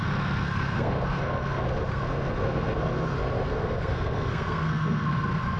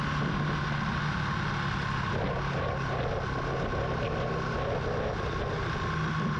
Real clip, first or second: second